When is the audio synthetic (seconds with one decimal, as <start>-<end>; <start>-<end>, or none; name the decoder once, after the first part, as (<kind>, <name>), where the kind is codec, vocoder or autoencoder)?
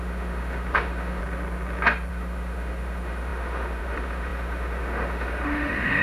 0.0-1.2 (autoencoder, DAC-VAE); 2.1-6.0